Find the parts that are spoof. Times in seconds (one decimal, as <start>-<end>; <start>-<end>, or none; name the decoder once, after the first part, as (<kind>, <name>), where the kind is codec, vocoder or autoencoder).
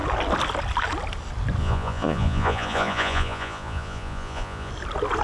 1.6-4.7 (vocoder, Vocos)